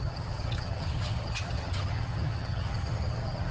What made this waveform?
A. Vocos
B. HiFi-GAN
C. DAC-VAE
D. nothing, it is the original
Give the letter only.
B